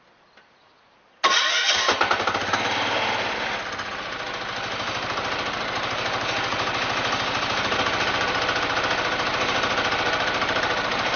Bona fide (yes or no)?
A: yes